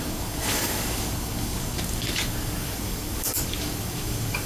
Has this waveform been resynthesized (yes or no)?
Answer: yes